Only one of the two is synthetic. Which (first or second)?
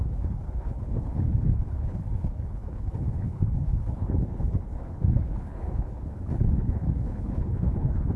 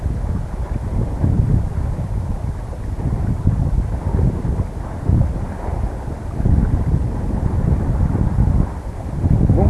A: first